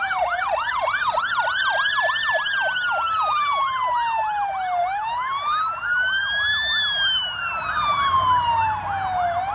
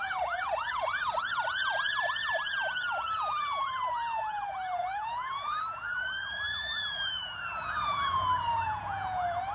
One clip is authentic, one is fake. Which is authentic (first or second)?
first